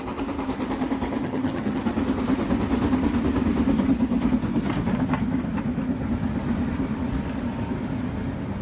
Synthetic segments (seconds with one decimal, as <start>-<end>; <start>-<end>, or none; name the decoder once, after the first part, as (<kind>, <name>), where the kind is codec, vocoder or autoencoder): 1.2-1.8 (vocoder, HiFi-GAN)

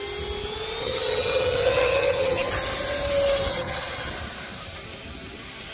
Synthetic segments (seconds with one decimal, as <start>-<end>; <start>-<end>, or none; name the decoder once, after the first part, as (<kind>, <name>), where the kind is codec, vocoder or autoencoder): 0.8-2.5 (vocoder, HiFi-GAN); 3.5-4.1

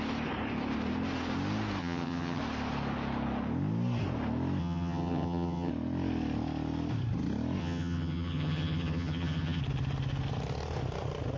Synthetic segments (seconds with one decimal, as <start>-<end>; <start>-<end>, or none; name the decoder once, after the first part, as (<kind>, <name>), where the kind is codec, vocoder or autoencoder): 1.8-2.4 (vocoder, HiFi-GAN); 4.6-5.7; 7.6-9.6

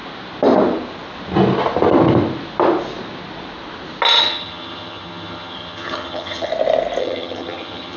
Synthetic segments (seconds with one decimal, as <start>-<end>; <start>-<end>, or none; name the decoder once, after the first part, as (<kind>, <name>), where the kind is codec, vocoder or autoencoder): 4.2-6.5 (vocoder, HiFi-GAN); 7.0-8.0

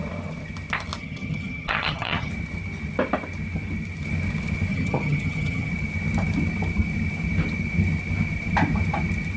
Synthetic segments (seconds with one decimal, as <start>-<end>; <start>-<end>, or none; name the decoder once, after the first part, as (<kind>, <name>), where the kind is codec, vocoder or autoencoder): 1.0-2.3 (vocoder, HiFi-GAN); 4.7-5.7

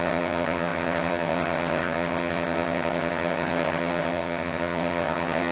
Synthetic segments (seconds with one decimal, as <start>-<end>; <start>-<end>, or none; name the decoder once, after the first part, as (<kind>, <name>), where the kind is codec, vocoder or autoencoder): 0.0-5.5 (vocoder, HiFi-GAN)

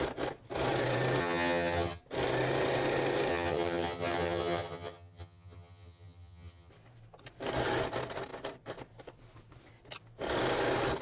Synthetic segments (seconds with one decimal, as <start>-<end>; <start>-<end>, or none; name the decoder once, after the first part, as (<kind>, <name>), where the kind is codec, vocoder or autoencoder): 1.2-2.0 (vocoder, HiFi-GAN); 3.3-6.7

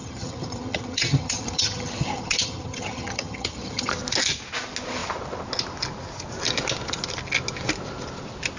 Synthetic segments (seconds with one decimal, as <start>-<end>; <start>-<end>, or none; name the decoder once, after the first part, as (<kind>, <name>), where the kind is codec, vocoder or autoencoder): 0.0-3.9 (vocoder, HiFi-GAN)